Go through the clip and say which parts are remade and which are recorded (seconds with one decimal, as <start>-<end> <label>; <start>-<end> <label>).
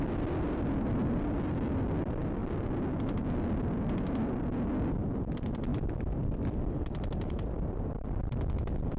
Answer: 0.0-2.4 remade; 2.4-3.2 recorded; 3.2-5.7 remade; 5.7-6.6 recorded; 6.6-9.0 remade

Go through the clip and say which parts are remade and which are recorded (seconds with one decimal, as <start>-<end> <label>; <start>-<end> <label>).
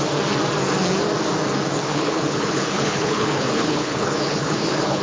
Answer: 0.0-1.8 recorded; 1.8-5.0 remade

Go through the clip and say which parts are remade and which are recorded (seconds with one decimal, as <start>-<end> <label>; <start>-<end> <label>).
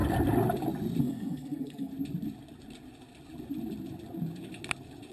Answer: 0.0-1.0 recorded; 1.0-1.9 remade; 1.9-5.1 recorded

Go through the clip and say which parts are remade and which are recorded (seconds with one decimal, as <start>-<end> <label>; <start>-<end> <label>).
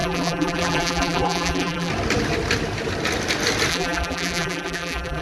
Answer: 0.0-1.9 remade; 1.9-3.7 recorded; 3.7-5.2 remade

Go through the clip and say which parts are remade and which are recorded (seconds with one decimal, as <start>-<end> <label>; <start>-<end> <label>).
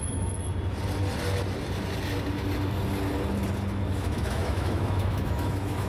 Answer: 0.0-0.4 remade; 0.4-3.9 recorded; 3.9-5.9 remade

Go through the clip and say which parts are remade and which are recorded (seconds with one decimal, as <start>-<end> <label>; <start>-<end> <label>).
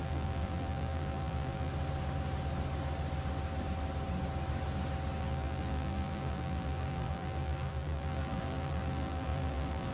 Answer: 0.0-1.7 remade; 1.7-5.2 recorded; 5.2-9.9 remade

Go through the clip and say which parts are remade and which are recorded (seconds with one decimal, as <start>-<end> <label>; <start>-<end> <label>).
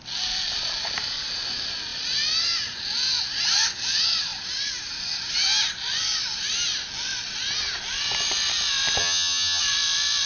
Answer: 0.0-9.0 recorded; 9.0-9.6 remade; 9.6-10.3 recorded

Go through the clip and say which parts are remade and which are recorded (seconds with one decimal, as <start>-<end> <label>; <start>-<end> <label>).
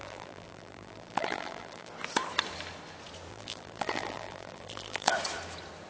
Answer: 0.0-1.9 remade; 1.9-3.3 recorded; 3.3-5.1 remade; 5.1-5.9 recorded